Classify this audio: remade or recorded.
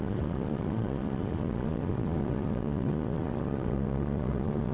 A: remade